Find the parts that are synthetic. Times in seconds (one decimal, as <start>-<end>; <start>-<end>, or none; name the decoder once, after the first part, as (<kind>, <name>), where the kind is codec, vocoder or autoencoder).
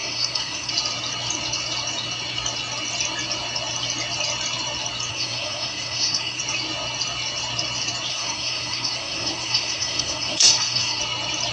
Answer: 0.0-0.7 (codec, SNAC); 5.1-6.4; 8.1-11.0